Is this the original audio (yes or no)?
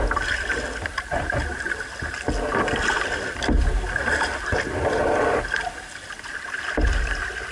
no